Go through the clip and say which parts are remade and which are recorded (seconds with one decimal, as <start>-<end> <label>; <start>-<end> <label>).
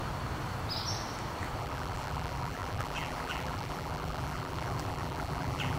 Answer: 0.0-1.6 recorded; 1.6-5.8 remade